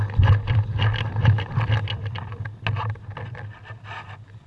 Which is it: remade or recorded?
recorded